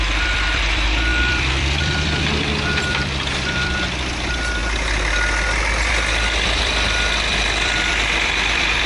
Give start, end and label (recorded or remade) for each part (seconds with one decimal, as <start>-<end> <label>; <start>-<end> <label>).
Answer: 0.0-4.6 remade; 4.6-5.9 recorded; 5.9-8.9 remade